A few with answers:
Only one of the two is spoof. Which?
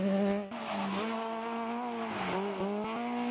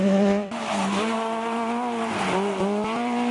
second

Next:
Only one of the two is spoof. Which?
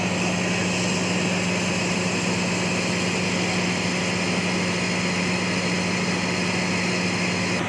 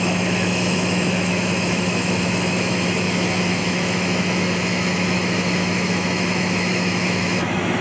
second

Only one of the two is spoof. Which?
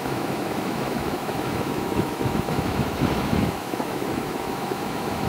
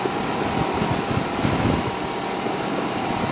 first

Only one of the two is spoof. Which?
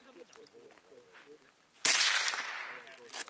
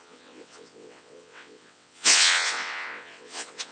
second